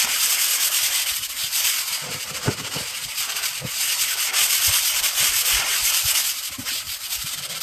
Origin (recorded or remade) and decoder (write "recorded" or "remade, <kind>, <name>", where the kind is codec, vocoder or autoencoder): remade, vocoder, BigVGAN v2